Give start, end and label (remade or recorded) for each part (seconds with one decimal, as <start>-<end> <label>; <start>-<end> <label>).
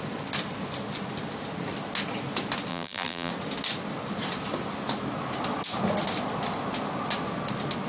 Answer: 0.0-2.7 recorded; 2.7-3.3 remade; 3.3-7.9 recorded